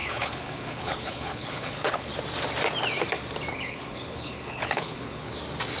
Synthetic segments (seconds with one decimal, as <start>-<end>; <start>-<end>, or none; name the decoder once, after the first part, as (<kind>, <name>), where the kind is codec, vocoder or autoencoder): 0.0-2.1 (codec, HILCodec); 3.5-5.3